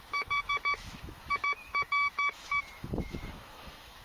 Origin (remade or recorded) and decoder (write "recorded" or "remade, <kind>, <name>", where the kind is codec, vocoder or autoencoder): remade, autoencoder, DAC-VAE